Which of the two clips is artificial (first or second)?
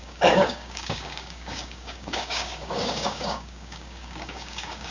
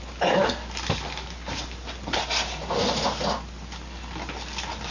first